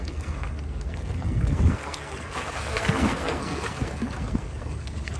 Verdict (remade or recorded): remade